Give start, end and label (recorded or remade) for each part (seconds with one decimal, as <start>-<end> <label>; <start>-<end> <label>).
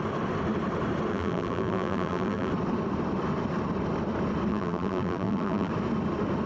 0.0-1.1 recorded; 1.1-2.5 remade; 2.5-4.5 recorded; 4.5-5.7 remade; 5.7-6.5 recorded